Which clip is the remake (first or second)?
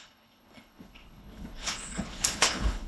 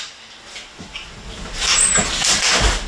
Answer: first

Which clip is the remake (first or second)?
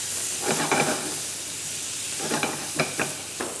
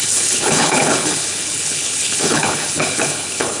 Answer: second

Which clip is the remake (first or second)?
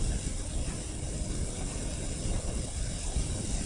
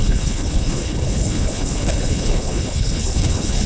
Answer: second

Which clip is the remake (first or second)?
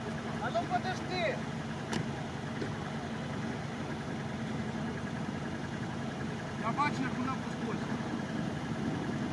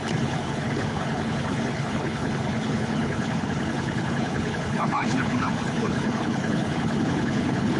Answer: second